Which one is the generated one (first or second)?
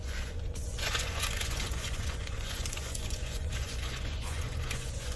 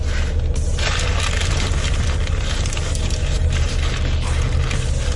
first